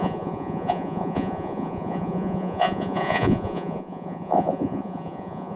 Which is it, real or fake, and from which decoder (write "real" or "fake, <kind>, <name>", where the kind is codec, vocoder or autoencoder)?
fake, vocoder, Vocos